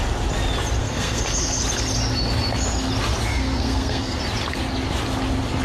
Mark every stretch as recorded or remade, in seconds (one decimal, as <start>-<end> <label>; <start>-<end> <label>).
0.0-0.8 recorded; 0.8-1.6 remade; 1.6-3.3 recorded; 3.3-4.2 remade; 4.2-5.6 recorded